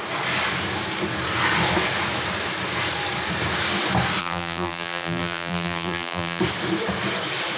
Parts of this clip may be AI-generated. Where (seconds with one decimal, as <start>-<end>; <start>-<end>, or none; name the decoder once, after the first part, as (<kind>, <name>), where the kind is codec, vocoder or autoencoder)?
4.2-6.4 (vocoder, BigVGAN v2)